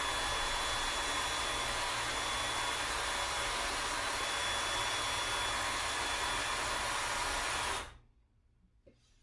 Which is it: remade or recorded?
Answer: recorded